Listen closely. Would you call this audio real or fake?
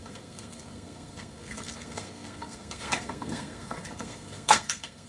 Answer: fake